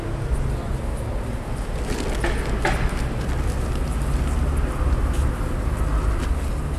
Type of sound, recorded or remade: recorded